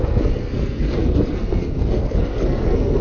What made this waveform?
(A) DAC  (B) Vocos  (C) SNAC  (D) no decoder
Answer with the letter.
C